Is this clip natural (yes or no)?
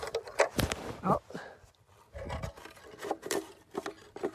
yes